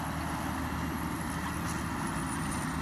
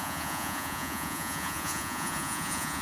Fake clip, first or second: second